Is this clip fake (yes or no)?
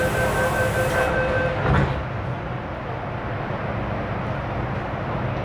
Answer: no